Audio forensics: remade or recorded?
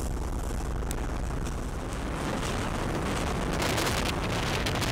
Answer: recorded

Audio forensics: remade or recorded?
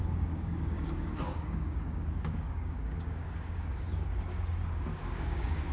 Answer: remade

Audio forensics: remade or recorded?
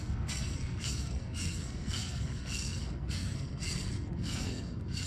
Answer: remade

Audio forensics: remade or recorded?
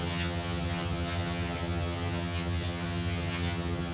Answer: remade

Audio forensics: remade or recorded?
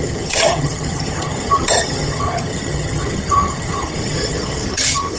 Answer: remade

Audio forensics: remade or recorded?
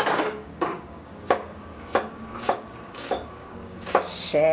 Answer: remade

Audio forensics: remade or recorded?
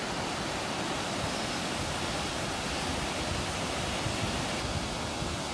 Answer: recorded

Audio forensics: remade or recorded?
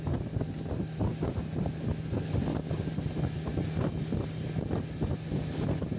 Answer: recorded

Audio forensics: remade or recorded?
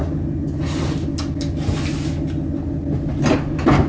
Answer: recorded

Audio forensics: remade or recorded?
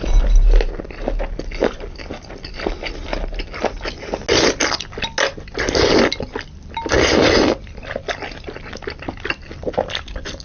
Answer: recorded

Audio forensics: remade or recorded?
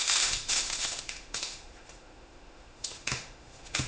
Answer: remade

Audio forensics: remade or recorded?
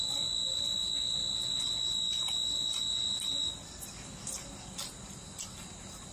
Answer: recorded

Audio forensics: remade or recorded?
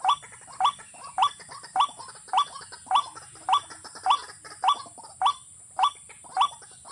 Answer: recorded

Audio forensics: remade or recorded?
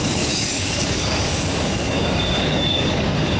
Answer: remade